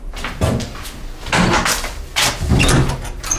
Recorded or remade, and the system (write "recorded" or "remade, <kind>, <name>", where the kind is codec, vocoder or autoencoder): recorded